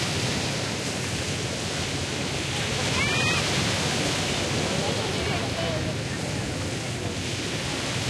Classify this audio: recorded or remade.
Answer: recorded